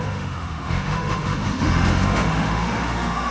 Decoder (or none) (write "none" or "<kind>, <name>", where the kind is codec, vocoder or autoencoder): autoencoder, DAC-VAE